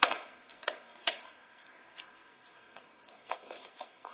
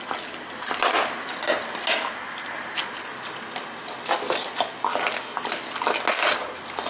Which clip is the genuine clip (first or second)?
second